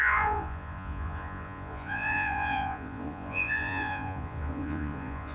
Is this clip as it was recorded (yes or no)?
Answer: no